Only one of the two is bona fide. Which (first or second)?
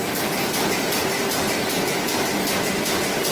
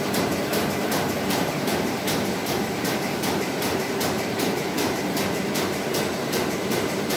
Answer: first